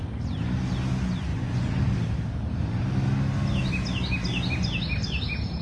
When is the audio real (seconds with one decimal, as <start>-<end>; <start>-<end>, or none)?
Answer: 0.0-1.3; 1.8-5.6